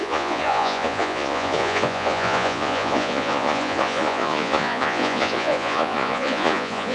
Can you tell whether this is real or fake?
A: fake